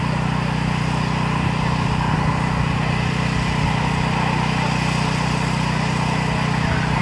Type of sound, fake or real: real